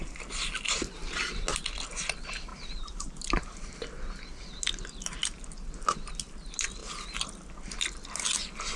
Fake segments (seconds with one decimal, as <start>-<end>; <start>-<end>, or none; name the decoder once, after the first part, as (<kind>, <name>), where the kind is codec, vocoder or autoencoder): 2.5-3.7 (vocoder, BigVGAN v2); 6.8-7.3